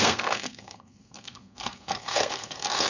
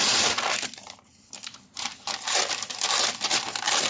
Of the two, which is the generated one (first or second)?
first